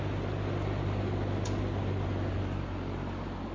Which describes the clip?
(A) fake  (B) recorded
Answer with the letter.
B